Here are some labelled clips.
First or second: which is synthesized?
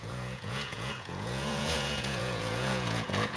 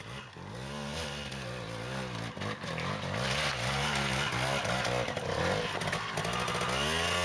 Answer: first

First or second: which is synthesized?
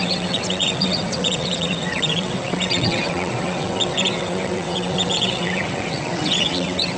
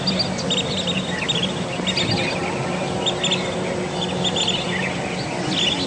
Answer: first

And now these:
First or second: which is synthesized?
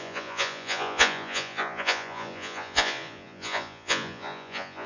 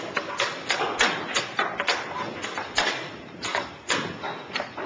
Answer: first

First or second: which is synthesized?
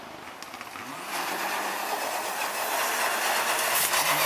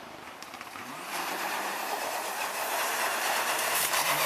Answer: second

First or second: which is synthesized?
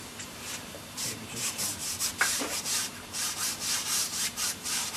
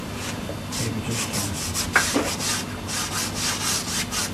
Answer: first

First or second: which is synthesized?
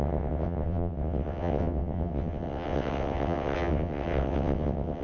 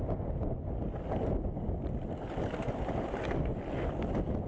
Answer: first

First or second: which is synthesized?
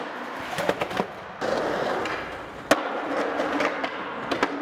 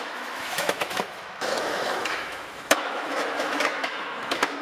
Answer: second